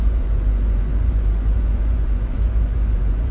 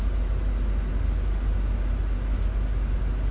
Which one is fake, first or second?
first